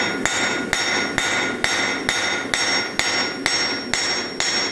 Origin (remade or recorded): recorded